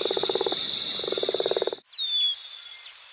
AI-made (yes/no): no